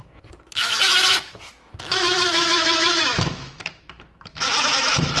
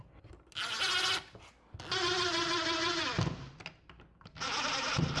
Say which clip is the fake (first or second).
first